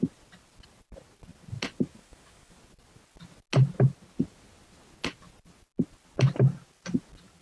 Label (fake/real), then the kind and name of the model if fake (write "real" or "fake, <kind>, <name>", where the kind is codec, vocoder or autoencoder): real